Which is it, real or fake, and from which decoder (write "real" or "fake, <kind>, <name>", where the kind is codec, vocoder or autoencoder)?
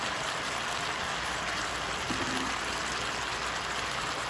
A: real